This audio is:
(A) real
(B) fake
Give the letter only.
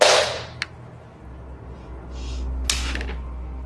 A